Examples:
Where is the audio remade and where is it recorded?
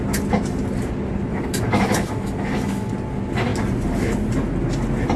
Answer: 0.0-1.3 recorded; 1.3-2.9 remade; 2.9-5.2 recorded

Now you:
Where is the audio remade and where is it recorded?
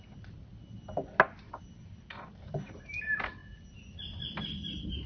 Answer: 0.0-5.1 recorded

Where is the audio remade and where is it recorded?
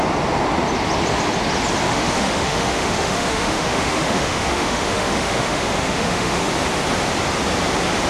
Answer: 0.0-1.9 recorded; 1.9-6.5 remade; 6.5-8.1 recorded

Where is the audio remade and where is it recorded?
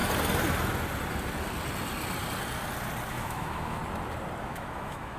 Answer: 0.0-3.1 recorded; 3.1-3.8 remade; 3.8-4.4 recorded; 4.4-5.2 remade